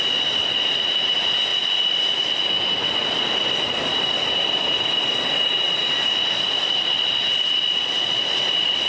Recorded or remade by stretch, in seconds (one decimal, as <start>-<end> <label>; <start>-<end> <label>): 0.0-8.9 recorded